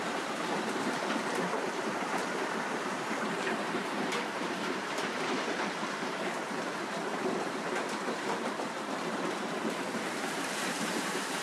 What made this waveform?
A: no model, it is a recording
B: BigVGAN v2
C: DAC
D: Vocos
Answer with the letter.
B